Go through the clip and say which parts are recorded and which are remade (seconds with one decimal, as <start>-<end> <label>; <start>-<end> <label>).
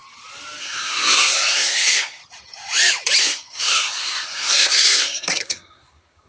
0.0-0.6 recorded; 0.6-2.2 remade; 2.2-3.2 recorded; 3.2-6.3 remade